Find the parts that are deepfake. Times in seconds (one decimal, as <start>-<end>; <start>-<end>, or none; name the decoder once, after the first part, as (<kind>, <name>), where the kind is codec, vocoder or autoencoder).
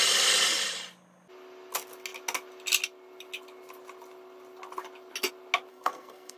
5.7-6.4 (codec, SNAC)